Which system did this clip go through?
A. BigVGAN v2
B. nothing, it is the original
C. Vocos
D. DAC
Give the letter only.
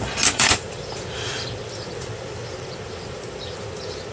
A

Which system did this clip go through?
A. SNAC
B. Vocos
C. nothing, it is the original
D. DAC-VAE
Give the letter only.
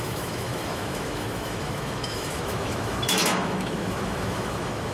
D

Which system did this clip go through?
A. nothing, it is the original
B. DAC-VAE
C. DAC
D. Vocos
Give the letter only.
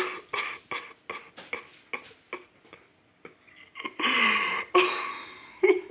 A